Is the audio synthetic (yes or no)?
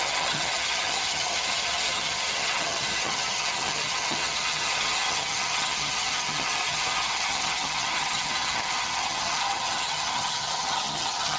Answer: yes